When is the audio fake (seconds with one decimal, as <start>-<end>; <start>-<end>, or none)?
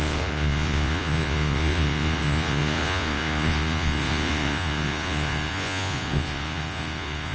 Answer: 0.0-7.3